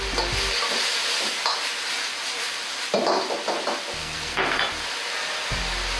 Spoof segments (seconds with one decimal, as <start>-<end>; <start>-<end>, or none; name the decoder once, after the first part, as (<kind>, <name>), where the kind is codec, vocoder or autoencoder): 4.0-4.6 (codec, SNAC)